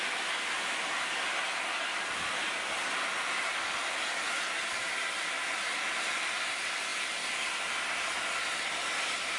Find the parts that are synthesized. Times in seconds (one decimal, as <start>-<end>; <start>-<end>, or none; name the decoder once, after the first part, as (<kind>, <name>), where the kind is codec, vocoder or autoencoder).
0.0-9.4 (vocoder, BigVGAN v2)